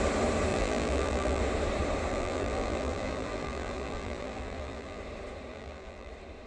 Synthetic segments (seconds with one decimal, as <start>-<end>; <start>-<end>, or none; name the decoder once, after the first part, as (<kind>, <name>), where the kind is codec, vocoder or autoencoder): 0.5-1.4 (vocoder, BigVGAN v2); 2.1-5.0; 5.5-6.1